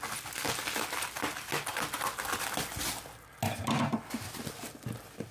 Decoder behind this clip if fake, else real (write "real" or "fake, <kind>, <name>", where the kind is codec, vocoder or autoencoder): real